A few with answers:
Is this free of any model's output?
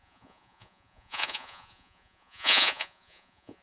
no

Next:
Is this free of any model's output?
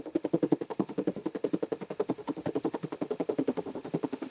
no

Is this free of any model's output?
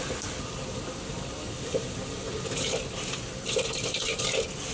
yes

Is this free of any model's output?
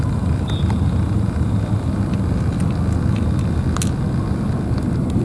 yes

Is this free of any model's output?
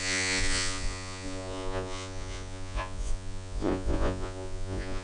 no